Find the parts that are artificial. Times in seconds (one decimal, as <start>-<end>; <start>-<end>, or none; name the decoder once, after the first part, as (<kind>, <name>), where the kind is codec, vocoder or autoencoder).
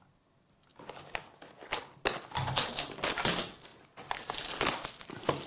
none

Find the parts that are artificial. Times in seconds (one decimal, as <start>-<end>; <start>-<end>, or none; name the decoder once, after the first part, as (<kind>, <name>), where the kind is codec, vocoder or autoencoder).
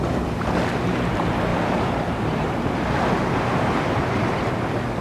1.5-4.5 (vocoder, BigVGAN v2)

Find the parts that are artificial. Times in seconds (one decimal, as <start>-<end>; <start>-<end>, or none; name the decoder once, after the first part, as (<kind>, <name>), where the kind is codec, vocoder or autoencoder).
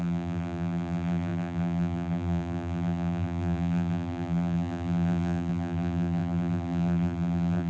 0.0-7.7 (vocoder, BigVGAN v2)